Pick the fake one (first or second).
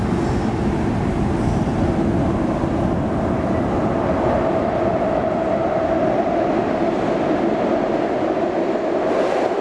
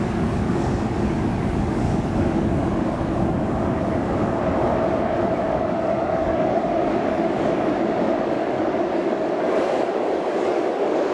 second